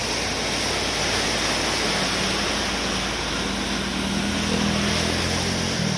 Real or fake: real